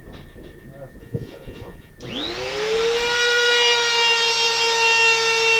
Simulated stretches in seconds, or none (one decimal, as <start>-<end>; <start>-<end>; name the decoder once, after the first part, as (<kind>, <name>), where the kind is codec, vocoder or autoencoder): 1.0-1.9 (vocoder, Vocos)